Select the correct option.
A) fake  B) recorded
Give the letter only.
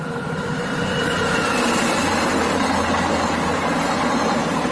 A